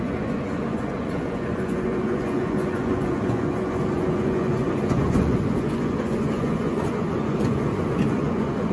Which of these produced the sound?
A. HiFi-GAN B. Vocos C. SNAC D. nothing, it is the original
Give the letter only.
B